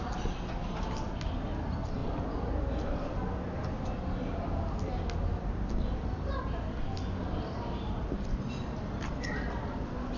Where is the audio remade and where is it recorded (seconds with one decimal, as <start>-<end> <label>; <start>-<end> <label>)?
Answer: 0.0-10.2 recorded